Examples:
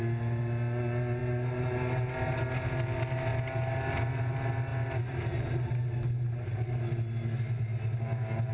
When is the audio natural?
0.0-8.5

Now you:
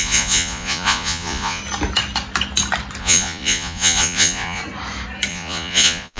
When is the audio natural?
1.6-3.0; 4.6-5.3

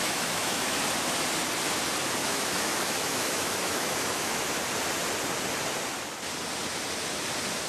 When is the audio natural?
0.8-2.2; 4.4-7.7

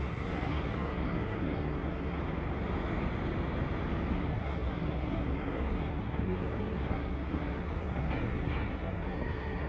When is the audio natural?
2.2-4.1

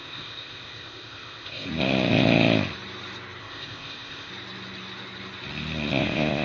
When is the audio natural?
1.7-3.4; 4.3-6.0

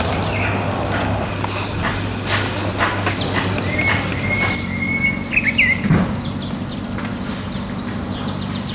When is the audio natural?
0.0-8.7

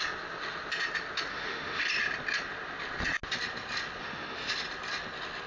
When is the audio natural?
0.0-1.3; 1.8-4.0; 4.5-5.5